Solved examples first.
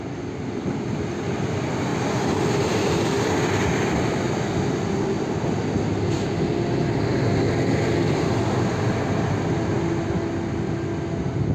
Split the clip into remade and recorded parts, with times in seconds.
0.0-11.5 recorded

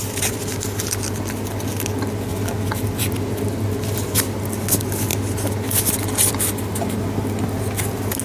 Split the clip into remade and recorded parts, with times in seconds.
0.0-8.2 recorded

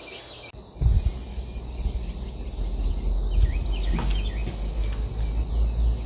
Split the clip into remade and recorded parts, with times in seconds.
0.0-6.1 recorded

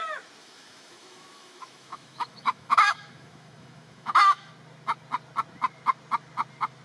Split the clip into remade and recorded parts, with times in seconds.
0.0-0.4 recorded; 0.4-4.5 remade; 4.5-6.8 recorded